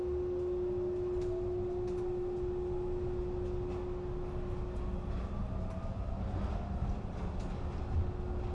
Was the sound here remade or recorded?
recorded